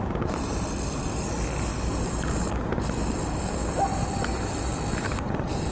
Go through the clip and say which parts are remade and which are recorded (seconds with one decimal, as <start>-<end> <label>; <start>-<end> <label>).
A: 0.0-5.7 recorded